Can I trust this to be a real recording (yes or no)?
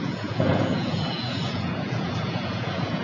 no